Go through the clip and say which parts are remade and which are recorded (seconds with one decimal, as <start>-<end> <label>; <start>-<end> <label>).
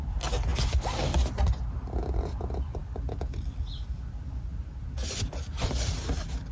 0.0-6.5 recorded